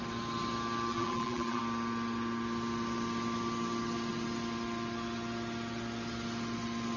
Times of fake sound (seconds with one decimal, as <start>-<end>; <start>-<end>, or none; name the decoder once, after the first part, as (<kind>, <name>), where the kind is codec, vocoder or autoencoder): 0.9-1.6 (vocoder, BigVGAN v2)

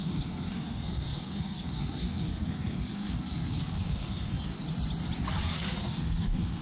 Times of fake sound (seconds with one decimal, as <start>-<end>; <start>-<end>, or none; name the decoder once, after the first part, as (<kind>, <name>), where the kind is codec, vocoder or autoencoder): 0.0-4.5 (codec, SNAC); 5.4-6.6